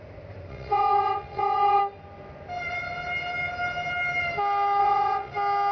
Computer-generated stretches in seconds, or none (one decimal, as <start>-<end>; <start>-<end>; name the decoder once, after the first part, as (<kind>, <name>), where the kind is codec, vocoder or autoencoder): 0.5-1.8 (vocoder, WaveNeXt); 4.8-5.3